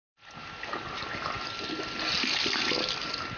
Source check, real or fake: real